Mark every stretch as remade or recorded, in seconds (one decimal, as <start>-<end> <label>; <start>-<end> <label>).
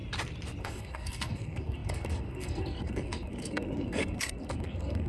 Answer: 0.0-0.6 recorded; 0.6-5.1 remade